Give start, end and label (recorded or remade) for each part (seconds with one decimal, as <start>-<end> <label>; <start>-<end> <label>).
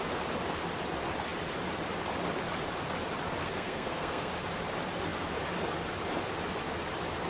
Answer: 0.0-3.4 recorded; 3.4-4.3 remade; 4.3-7.3 recorded